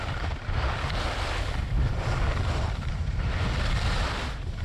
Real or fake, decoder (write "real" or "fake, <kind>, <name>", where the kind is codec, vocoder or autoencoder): fake, vocoder, BigVGAN v2